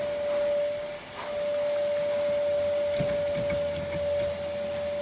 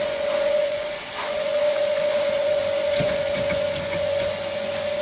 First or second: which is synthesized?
second